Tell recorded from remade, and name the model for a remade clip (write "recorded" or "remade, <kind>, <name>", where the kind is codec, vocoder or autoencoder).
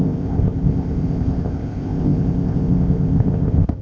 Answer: remade, codec, ZipCodec